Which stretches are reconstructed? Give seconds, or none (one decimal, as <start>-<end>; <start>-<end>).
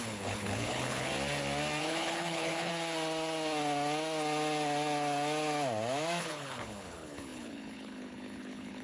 0.0-1.1; 1.8-2.7; 6.2-8.8